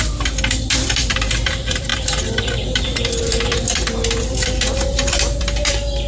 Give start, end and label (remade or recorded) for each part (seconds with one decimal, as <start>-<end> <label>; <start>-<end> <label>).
0.0-6.1 remade